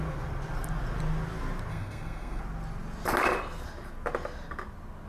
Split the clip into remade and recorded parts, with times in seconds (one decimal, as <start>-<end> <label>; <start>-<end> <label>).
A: 0.0-1.7 recorded; 1.7-2.4 remade; 2.4-5.1 recorded